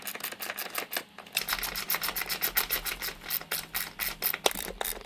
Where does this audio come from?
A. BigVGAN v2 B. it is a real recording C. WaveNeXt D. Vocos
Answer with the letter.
B